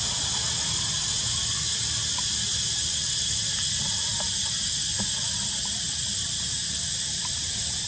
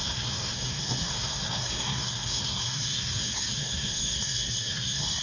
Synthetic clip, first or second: second